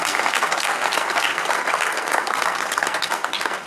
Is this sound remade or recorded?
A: remade